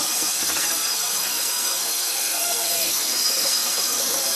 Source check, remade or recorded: remade